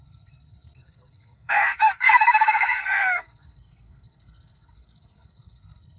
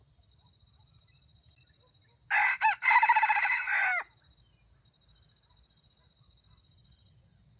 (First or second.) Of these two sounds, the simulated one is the first